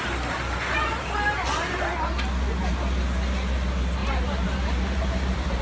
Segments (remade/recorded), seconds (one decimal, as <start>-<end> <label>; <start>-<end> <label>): 0.0-4.0 recorded; 4.0-5.6 remade